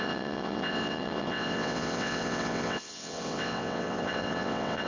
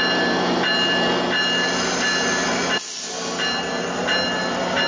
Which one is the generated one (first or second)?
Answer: first